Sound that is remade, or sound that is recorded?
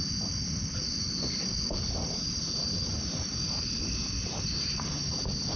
recorded